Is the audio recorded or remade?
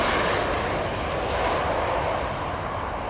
recorded